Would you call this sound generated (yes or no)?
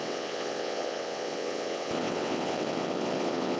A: yes